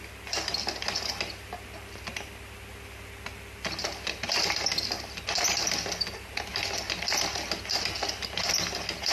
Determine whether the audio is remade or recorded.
recorded